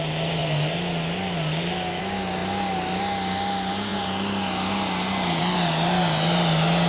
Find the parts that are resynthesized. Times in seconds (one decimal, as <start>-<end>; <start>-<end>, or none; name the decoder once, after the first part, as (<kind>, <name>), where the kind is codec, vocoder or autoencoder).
none